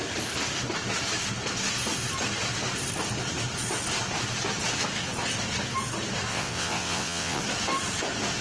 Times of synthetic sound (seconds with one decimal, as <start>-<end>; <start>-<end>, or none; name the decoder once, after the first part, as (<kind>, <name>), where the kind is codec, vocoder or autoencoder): 6.3-7.4 (vocoder, WaveNeXt)